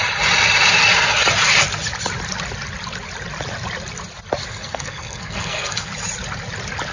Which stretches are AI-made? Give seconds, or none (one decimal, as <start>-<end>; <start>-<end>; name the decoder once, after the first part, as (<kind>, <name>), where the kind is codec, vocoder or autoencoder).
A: 4.5-5.9 (codec, SNAC)

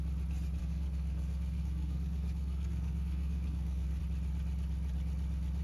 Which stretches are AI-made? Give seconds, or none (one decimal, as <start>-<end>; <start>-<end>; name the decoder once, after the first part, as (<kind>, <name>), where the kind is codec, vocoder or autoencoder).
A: 0.6-4.0 (codec, SNAC)

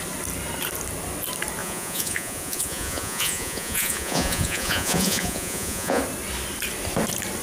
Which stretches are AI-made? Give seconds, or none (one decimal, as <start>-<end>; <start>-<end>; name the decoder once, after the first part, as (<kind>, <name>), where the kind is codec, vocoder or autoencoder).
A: 1.6-6.0 (vocoder, Vocos)

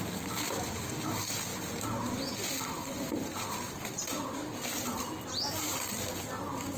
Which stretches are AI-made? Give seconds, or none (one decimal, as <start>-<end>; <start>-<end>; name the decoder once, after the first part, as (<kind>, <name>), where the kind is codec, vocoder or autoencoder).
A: 1.5-5.0 (vocoder, BigVGAN v2)

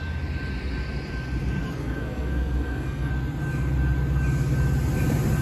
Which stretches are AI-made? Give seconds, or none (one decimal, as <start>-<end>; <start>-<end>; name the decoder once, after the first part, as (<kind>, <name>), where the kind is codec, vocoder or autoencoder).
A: 1.6-3.1 (codec, SNAC)